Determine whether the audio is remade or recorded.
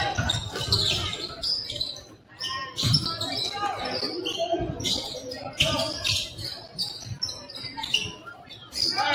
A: recorded